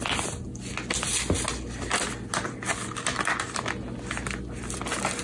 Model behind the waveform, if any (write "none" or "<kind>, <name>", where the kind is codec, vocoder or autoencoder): none